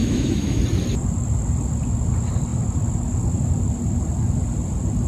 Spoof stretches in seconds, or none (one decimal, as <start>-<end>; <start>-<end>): 0.0-0.6